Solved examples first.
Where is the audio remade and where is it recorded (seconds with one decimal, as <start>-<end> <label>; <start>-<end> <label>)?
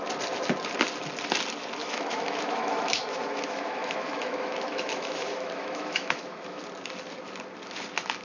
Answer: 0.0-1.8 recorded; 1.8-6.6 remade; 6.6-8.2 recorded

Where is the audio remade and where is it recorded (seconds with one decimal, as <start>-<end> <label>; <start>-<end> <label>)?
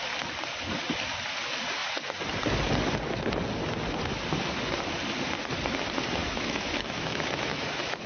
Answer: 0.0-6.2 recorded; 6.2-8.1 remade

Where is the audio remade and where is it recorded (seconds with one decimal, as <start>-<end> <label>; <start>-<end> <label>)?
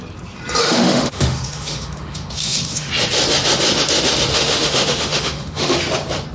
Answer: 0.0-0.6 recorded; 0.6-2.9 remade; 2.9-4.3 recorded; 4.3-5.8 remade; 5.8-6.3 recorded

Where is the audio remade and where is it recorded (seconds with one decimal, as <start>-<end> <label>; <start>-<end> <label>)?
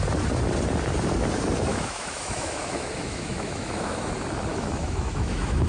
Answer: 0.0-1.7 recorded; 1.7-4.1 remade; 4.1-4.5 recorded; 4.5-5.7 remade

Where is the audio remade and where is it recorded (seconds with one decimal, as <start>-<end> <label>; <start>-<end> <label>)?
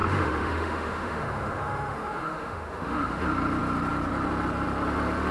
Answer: 0.0-3.2 remade; 3.2-5.3 recorded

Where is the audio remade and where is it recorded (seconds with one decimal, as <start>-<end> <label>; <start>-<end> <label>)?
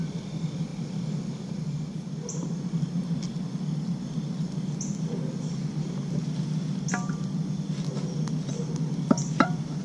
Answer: 0.0-9.8 recorded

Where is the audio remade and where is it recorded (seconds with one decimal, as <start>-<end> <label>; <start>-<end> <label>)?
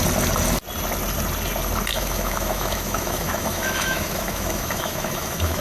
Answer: 0.0-1.9 recorded; 1.9-5.6 remade